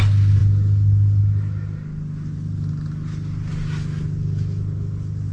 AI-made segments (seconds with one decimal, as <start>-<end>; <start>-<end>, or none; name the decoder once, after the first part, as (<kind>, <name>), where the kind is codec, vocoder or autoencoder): none

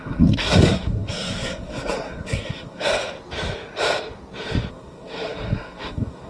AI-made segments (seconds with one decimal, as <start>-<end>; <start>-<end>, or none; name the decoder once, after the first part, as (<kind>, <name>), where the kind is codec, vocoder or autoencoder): 0.0-2.9 (codec, SNAC); 4.7-6.3

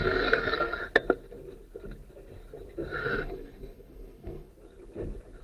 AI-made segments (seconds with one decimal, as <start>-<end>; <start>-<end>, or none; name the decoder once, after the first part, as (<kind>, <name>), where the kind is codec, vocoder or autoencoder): 0.0-0.8 (codec, SNAC); 3.0-4.5

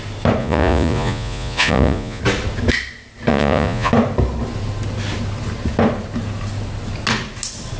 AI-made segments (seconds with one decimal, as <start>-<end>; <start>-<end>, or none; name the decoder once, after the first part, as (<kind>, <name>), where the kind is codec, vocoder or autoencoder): 0.4-2.2 (vocoder, Vocos); 3.3-3.9

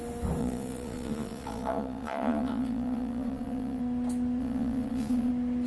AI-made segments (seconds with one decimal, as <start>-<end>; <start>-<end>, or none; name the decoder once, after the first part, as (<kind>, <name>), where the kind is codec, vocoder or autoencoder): 0.4-3.8 (vocoder, Vocos); 4.4-5.3

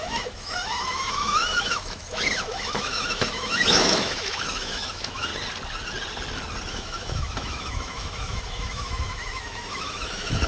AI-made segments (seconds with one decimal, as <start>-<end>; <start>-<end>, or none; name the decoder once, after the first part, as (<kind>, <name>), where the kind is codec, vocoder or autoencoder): 0.0-5.3 (autoencoder, DAC-VAE); 6.7-10.5